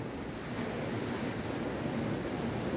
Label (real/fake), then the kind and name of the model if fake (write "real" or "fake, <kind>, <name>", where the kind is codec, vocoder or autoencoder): real